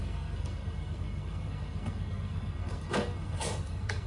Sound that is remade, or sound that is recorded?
remade